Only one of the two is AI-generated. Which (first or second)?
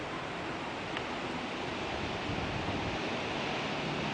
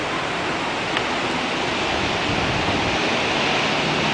first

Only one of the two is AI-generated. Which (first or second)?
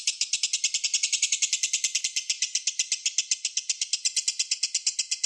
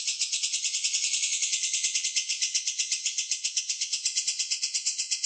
second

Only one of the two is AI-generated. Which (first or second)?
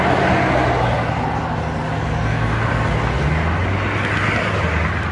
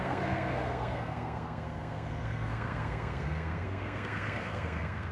second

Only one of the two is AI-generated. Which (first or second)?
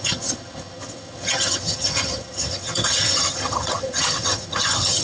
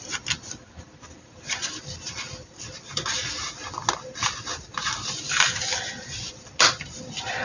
first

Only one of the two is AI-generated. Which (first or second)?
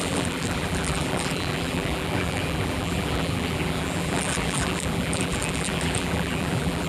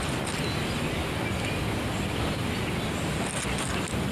first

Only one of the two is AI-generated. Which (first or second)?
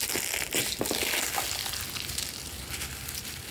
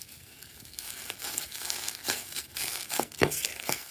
second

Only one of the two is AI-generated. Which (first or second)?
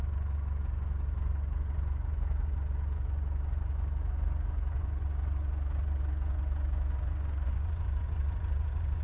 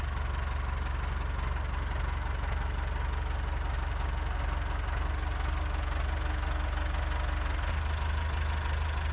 first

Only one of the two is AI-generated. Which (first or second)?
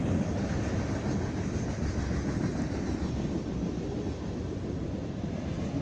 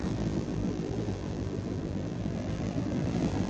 second